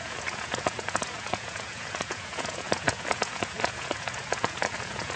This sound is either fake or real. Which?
fake